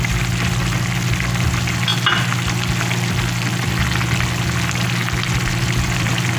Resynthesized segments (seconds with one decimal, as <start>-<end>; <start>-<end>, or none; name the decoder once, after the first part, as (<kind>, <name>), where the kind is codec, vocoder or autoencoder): 0.0-1.9 (vocoder, BigVGAN v2); 5.5-6.4